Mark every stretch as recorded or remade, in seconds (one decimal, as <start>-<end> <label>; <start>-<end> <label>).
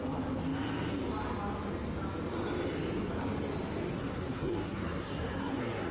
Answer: 0.0-3.9 recorded; 3.9-5.9 remade